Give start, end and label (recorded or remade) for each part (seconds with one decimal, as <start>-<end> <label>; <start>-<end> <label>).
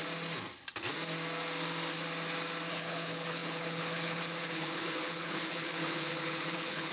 0.0-2.7 recorded; 2.7-6.9 remade